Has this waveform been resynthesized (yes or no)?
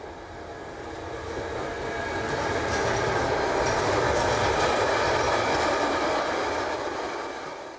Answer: no